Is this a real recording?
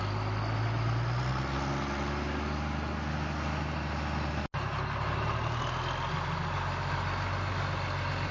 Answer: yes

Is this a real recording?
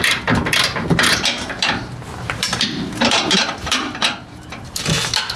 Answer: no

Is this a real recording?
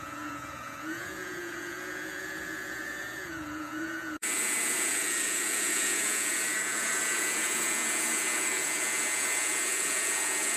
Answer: no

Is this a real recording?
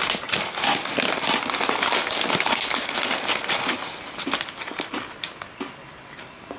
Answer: yes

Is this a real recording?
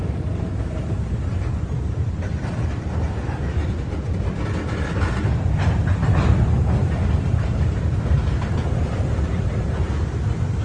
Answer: yes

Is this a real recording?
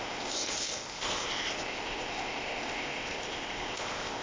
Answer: no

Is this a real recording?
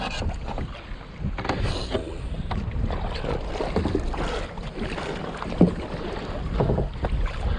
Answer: yes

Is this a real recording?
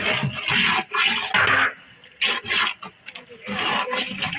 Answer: yes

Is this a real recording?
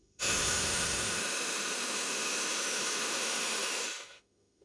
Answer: no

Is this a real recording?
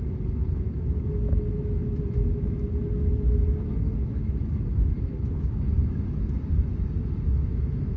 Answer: no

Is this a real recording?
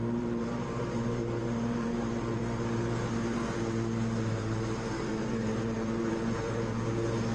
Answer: no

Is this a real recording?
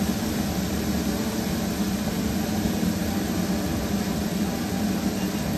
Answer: yes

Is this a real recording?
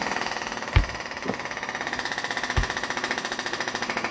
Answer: yes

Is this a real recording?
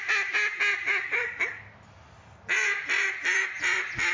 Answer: yes